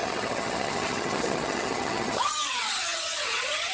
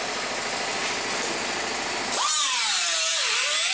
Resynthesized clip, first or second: first